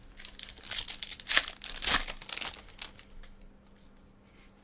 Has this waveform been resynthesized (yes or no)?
no